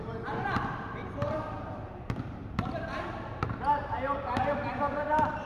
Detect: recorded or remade remade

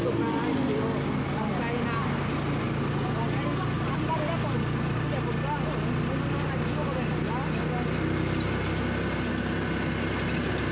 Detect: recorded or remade recorded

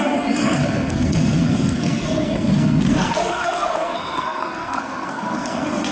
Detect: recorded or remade remade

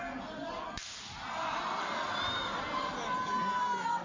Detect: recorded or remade recorded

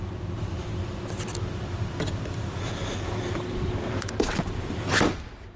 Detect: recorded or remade remade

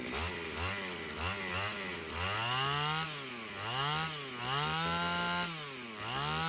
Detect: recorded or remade recorded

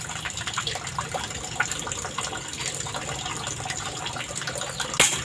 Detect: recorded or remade recorded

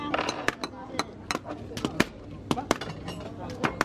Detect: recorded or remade recorded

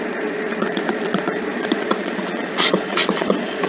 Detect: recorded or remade remade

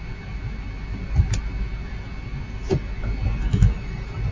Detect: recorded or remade recorded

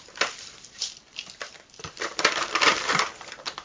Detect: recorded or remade remade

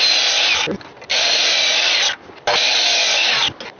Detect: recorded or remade recorded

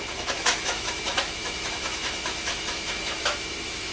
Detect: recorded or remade remade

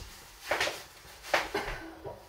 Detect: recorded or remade recorded